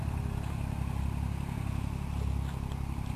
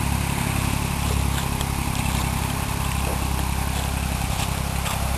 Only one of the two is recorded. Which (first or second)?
first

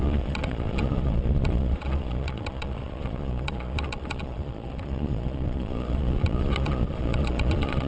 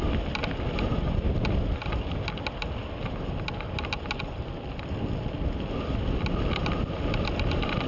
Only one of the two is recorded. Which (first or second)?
second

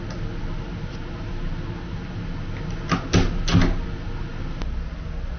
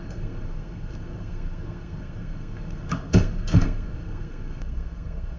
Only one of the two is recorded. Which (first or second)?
first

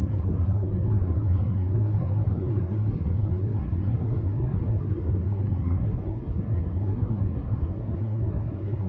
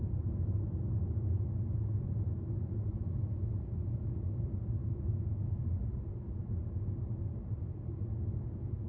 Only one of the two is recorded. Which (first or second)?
second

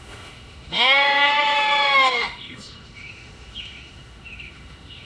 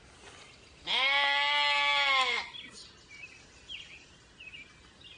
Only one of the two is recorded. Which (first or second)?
second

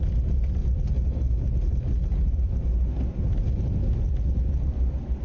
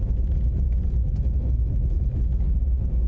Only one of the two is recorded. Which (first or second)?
second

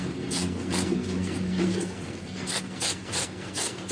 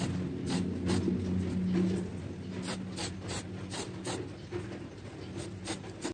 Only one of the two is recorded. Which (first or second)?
second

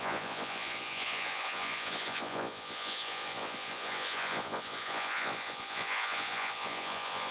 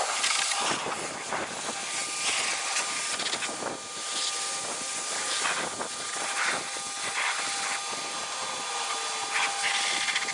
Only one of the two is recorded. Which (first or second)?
second